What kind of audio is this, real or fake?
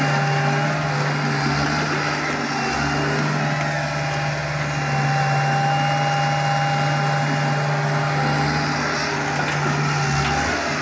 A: real